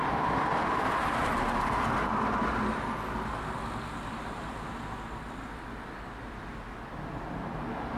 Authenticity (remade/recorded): recorded